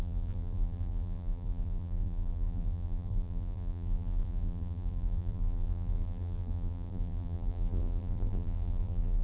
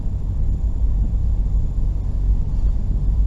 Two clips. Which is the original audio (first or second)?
second